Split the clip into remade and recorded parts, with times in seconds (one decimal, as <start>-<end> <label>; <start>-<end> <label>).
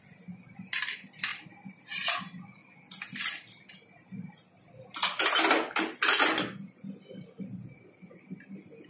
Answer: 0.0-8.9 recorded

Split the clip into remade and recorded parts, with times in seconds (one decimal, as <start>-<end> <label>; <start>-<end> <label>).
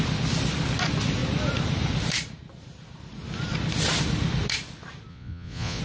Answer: 0.0-5.1 recorded; 5.1-5.8 remade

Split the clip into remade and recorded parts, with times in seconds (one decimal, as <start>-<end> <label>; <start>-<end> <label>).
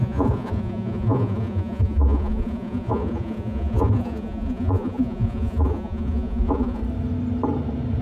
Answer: 0.0-6.8 remade; 6.8-8.0 recorded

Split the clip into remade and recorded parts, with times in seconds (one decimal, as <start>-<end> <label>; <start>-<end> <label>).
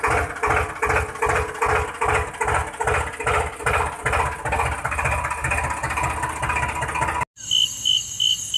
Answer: 0.0-8.6 recorded